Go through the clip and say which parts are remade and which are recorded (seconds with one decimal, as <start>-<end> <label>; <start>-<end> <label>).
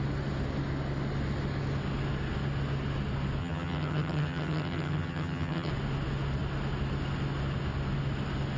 0.0-3.4 recorded; 3.4-5.7 remade; 5.7-8.6 recorded